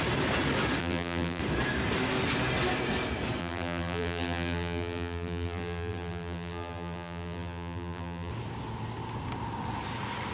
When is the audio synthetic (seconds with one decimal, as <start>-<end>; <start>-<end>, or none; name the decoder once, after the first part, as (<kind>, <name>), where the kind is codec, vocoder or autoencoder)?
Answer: 0.8-1.4 (vocoder, BigVGAN v2); 3.4-8.3